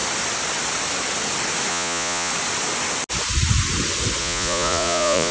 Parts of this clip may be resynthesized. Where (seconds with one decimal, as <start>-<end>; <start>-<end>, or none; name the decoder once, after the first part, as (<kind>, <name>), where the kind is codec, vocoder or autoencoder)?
1.7-2.3 (vocoder, Vocos); 4.2-5.3